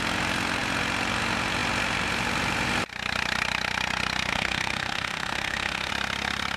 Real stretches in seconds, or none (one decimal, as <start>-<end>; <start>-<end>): 0.0-4.3; 5.9-6.6